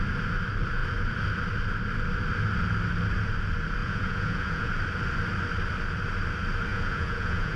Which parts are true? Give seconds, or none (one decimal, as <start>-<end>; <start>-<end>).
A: 0.0-3.8; 4.7-6.7